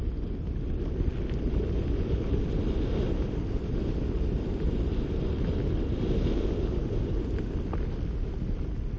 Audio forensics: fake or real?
real